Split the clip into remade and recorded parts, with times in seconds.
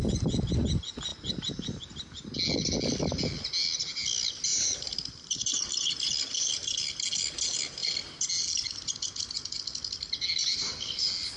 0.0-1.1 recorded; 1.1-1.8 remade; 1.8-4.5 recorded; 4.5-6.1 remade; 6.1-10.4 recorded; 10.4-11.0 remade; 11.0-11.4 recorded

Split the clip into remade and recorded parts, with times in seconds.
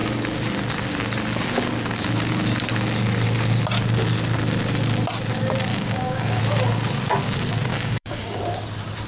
0.0-5.7 recorded; 5.7-6.4 remade; 6.4-7.7 recorded; 7.7-8.4 remade; 8.4-9.1 recorded